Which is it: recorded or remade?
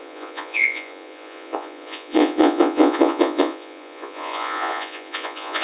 remade